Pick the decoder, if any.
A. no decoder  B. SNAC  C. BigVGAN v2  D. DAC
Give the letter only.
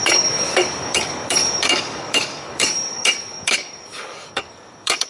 D